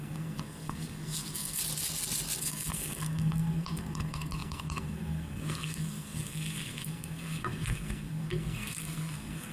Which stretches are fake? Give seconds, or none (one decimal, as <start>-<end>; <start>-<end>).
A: 0.0-1.6; 2.4-9.5